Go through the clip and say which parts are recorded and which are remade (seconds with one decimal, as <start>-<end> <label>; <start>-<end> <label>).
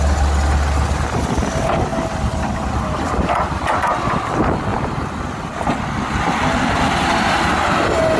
0.0-8.2 recorded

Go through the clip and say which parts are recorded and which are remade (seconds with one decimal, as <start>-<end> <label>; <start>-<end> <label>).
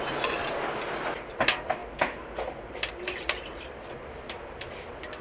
0.0-5.2 recorded